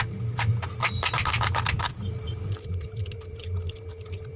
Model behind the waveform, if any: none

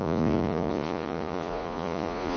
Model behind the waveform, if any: vocoder, Vocos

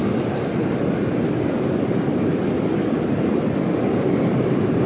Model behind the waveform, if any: none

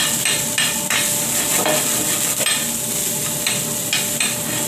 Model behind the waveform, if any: none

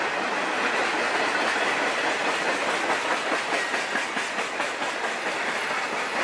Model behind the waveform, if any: none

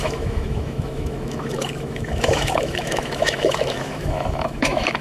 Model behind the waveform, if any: autoencoder, DAC-VAE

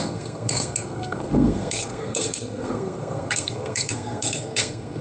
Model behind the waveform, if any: codec, SNAC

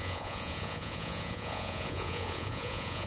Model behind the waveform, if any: vocoder, Vocos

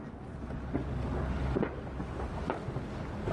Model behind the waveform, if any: none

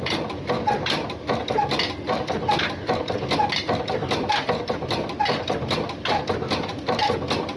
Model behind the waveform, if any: none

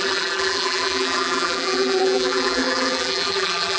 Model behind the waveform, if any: vocoder, BigVGAN v2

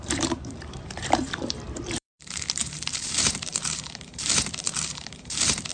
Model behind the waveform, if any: vocoder, BigVGAN v2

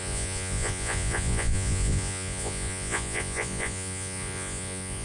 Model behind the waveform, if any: vocoder, Vocos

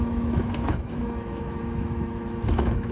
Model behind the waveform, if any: autoencoder, DAC-VAE